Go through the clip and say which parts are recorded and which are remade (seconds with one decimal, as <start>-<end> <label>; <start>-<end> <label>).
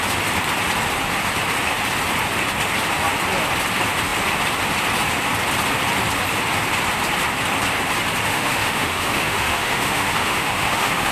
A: 0.0-8.3 recorded; 8.3-11.1 remade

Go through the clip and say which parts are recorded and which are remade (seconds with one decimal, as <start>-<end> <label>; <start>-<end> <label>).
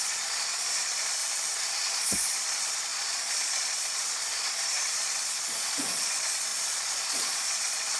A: 0.0-1.2 remade; 1.2-1.7 recorded; 1.7-8.0 remade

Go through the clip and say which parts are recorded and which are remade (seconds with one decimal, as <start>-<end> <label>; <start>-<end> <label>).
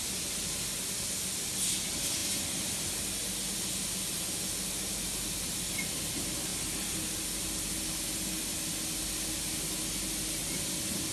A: 0.0-11.1 recorded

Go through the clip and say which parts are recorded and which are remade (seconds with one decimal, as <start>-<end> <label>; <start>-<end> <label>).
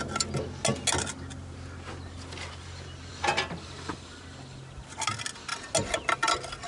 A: 0.0-6.7 recorded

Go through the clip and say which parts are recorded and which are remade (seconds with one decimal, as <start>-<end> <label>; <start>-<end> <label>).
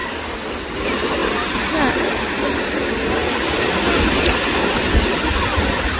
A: 0.0-6.0 recorded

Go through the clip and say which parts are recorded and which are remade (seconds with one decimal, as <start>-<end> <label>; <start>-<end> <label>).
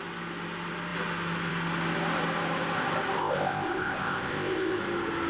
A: 0.0-3.2 recorded; 3.2-4.8 remade; 4.8-5.3 recorded